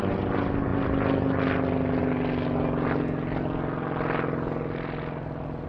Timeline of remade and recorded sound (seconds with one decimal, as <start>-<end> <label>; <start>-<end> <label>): 0.0-5.7 recorded